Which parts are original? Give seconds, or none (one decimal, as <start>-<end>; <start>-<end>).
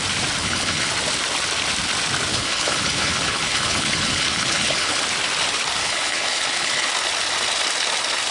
0.0-0.4; 0.9-2.3; 5.0-5.8; 6.9-8.3